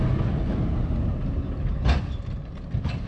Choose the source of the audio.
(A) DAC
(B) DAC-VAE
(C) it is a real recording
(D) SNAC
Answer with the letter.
C